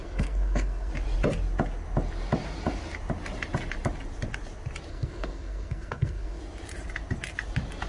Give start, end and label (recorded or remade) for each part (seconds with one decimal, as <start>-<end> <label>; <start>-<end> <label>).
0.0-0.9 remade; 0.9-4.9 recorded; 4.9-6.4 remade; 6.4-7.9 recorded